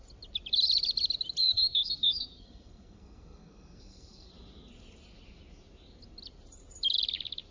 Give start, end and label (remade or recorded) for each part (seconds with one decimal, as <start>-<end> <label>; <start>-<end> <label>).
0.0-1.4 recorded; 1.4-4.3 remade; 4.3-7.5 recorded